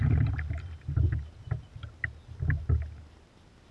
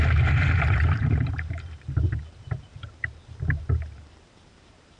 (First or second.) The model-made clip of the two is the second